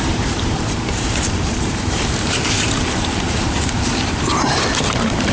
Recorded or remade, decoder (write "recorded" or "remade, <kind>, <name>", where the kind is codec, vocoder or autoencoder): remade, vocoder, BigVGAN v2